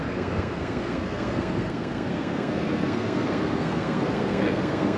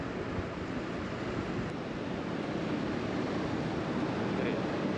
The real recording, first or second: second